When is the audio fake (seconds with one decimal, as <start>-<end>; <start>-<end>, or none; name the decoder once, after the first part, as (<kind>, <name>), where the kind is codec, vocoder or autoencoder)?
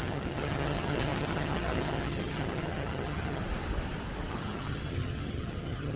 0.0-3.4 (vocoder, HiFi-GAN); 4.3-6.0